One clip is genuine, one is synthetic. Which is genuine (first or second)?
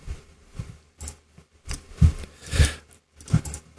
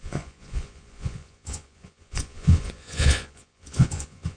first